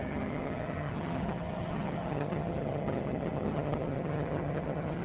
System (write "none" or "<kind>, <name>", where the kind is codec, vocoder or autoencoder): vocoder, HiFi-GAN